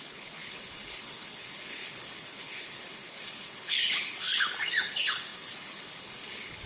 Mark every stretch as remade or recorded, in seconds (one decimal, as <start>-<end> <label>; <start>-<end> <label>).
0.0-6.7 remade